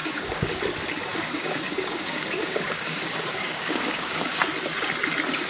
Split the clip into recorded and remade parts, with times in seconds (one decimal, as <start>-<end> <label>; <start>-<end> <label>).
0.0-0.6 remade; 0.6-1.1 recorded; 1.1-4.4 remade; 4.4-5.5 recorded

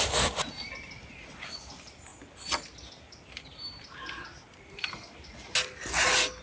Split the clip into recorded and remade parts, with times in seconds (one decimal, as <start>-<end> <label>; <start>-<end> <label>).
0.0-6.4 recorded

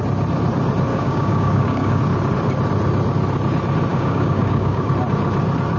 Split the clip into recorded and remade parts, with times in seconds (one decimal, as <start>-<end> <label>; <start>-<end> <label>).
0.0-0.9 recorded; 0.9-2.0 remade; 2.0-3.9 recorded; 3.9-4.9 remade; 4.9-5.8 recorded

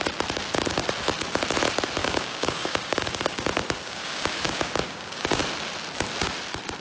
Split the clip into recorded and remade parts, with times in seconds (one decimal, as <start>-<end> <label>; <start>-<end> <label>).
0.0-2.0 recorded; 2.0-5.4 remade; 5.4-6.8 recorded

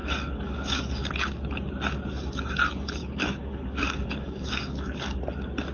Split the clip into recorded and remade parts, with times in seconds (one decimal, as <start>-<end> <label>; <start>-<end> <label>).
0.0-1.1 remade; 1.1-3.0 recorded; 3.0-5.2 remade; 5.2-5.7 recorded

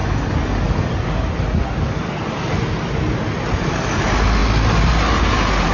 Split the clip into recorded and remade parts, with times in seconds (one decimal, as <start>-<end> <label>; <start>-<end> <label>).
0.0-5.7 recorded